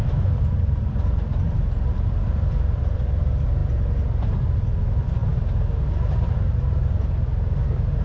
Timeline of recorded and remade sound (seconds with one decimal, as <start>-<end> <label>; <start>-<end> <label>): 0.0-3.6 remade; 3.6-4.4 recorded; 4.4-5.2 remade; 5.2-8.0 recorded